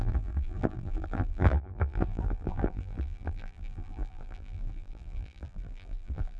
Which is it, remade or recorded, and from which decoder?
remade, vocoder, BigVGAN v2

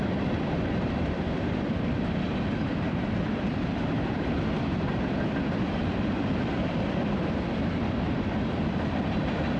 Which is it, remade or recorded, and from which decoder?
remade, vocoder, BigVGAN v2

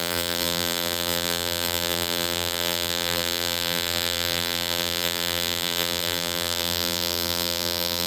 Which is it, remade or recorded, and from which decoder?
remade, vocoder, BigVGAN v2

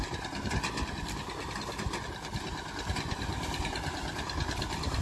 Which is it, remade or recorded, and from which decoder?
remade, vocoder, BigVGAN v2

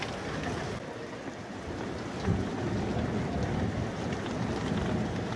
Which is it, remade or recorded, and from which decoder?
remade, vocoder, BigVGAN v2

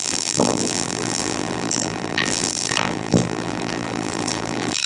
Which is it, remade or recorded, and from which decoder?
remade, vocoder, BigVGAN v2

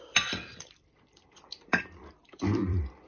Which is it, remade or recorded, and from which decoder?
remade, vocoder, BigVGAN v2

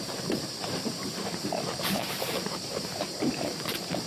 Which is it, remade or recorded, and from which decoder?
remade, vocoder, BigVGAN v2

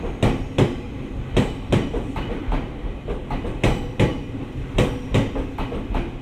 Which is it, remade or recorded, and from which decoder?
recorded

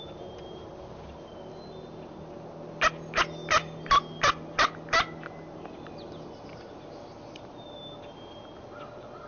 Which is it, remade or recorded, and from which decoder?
recorded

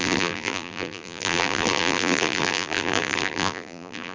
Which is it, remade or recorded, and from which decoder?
remade, vocoder, BigVGAN v2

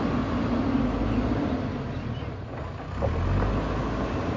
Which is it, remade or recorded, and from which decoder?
recorded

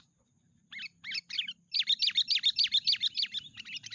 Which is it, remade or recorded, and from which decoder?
recorded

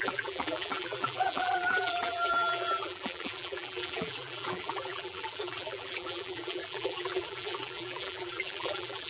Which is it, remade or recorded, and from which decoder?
remade, vocoder, BigVGAN v2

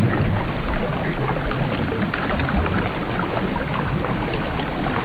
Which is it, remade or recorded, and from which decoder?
recorded